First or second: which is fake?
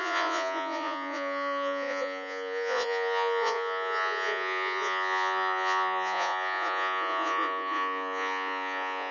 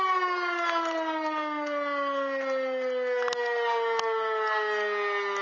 first